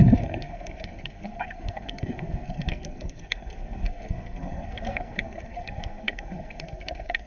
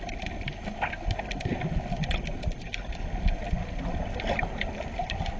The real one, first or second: second